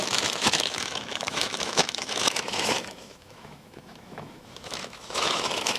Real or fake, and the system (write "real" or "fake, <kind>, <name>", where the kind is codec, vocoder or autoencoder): fake, autoencoder, DAC-VAE